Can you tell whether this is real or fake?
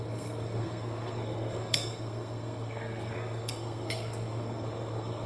fake